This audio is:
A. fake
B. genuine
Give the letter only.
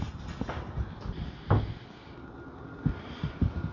B